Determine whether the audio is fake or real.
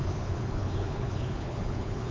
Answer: fake